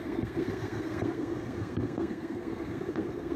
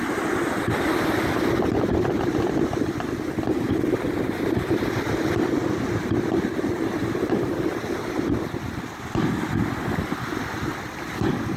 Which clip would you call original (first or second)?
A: second